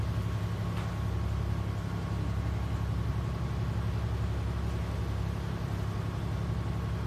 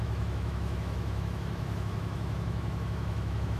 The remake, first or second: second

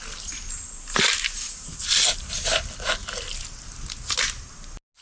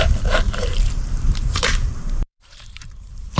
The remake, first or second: second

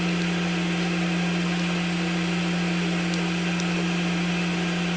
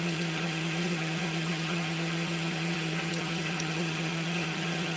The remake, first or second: second